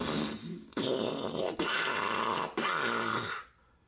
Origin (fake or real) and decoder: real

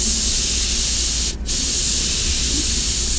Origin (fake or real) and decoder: real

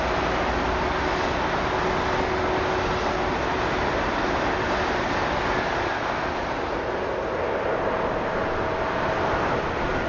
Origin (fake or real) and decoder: real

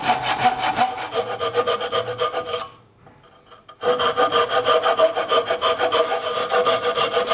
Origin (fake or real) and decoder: real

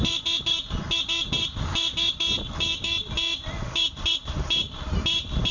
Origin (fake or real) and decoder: real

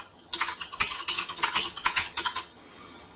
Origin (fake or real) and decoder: fake, vocoder, HiFi-GAN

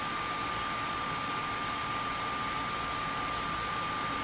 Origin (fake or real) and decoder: real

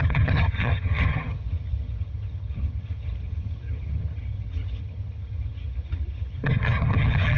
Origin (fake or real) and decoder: fake, vocoder, HiFi-GAN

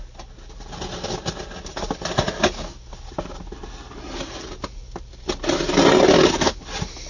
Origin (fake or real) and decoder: real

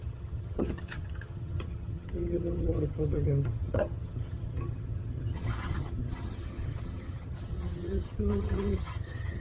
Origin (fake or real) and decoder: fake, vocoder, HiFi-GAN